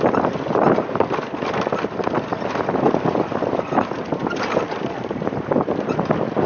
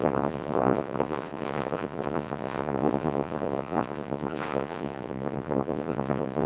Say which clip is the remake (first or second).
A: second